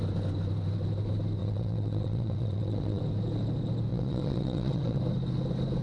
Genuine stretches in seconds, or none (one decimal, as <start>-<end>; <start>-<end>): 0.0-1.4; 3.0-3.9; 5.0-5.8